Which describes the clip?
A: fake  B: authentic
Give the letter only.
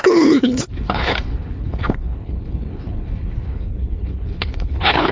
A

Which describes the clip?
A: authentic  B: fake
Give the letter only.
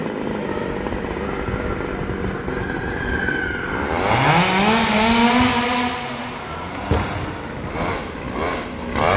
A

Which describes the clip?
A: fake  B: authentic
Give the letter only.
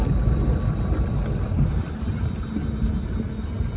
B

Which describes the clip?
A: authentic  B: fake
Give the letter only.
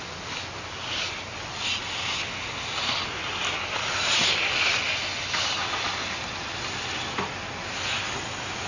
A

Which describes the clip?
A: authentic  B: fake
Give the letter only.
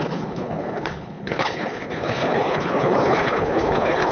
B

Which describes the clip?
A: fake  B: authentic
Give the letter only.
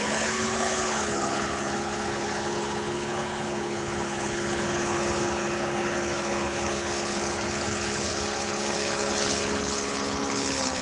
A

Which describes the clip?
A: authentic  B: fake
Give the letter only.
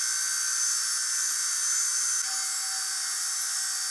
A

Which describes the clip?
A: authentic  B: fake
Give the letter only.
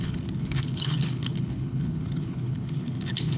B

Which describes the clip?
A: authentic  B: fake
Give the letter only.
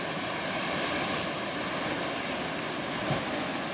A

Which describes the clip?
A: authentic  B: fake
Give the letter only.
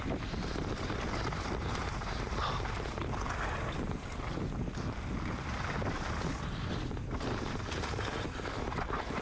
A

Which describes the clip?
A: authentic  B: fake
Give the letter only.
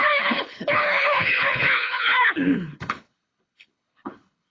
B